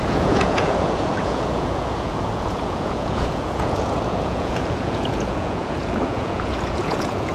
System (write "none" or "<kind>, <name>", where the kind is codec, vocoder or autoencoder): vocoder, Vocos